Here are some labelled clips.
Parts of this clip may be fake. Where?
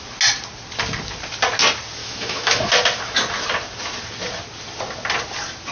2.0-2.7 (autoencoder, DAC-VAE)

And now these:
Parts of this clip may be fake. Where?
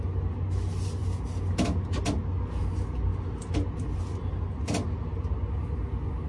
none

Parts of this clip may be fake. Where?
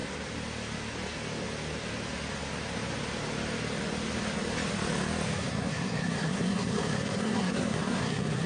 5.4-8.5 (codec, SNAC)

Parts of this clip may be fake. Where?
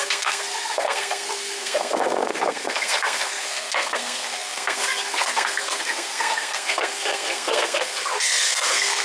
0.0-9.0 (codec, SNAC)